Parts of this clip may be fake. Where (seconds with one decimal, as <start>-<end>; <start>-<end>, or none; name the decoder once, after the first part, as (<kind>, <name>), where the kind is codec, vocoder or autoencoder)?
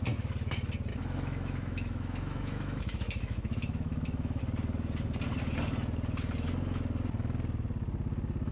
0.9-4.4 (autoencoder, DAC-VAE)